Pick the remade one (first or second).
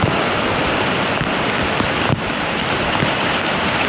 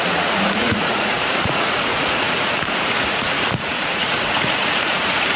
second